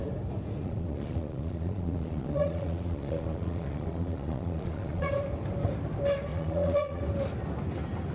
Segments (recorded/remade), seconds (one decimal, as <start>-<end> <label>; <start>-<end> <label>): 0.0-0.6 recorded; 0.6-5.1 remade; 5.1-6.3 recorded; 6.3-7.0 remade; 7.0-8.1 recorded